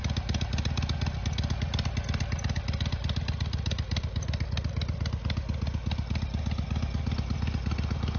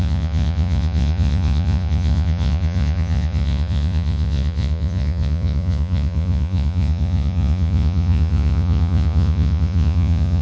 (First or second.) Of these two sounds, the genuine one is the first